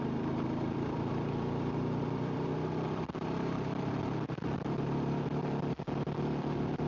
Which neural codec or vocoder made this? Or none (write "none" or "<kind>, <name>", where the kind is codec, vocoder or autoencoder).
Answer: vocoder, BigVGAN v2